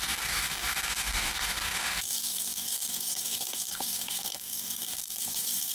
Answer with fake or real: fake